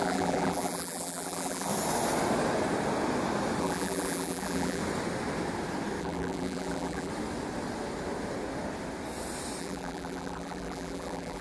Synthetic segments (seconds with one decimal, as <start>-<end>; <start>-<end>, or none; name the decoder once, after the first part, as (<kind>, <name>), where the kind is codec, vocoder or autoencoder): 0.0-1.7 (vocoder, BigVGAN v2); 3.6-4.8; 6.0-7.1; 9.6-11.4